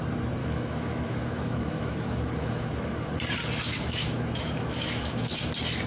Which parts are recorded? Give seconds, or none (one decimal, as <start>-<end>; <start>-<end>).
0.0-0.4; 3.1-3.7; 5.4-5.9